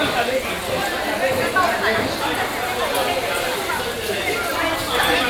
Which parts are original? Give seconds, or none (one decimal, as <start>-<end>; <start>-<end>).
0.0-5.3